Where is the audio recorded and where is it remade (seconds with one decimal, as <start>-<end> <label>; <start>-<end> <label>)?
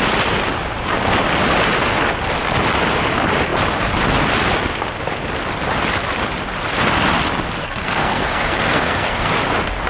0.0-7.6 recorded; 7.6-9.3 remade; 9.3-9.9 recorded